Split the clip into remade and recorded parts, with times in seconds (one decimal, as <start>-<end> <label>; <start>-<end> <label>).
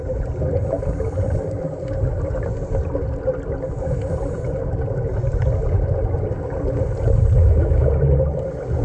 0.0-7.4 recorded; 7.4-7.9 remade; 7.9-8.8 recorded